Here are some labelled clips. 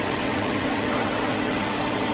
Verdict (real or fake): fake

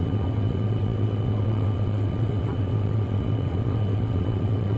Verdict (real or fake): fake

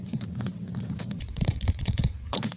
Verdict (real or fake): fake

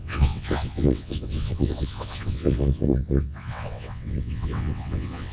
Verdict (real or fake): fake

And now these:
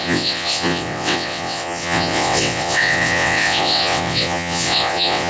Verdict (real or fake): fake